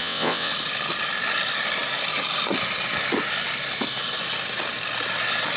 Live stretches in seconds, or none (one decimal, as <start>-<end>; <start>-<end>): 0.5-5.6